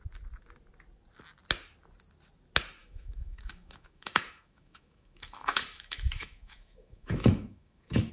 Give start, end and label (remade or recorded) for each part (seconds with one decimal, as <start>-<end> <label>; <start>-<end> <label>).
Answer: 0.0-2.8 recorded; 2.8-8.1 remade